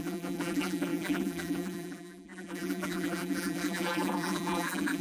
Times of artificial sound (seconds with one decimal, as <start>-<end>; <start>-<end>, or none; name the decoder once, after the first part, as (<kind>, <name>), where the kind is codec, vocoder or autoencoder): 0.0-5.0 (vocoder, BigVGAN v2)